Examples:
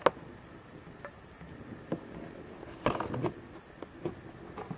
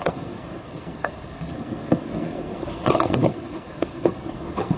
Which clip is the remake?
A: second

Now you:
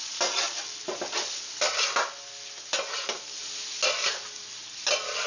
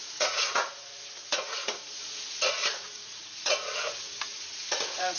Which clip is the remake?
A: second